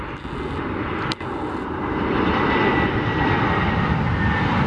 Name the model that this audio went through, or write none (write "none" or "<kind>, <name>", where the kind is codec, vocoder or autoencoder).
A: none